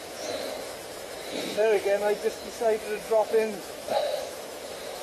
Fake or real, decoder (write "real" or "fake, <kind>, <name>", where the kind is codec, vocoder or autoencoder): fake, autoencoder, DAC-VAE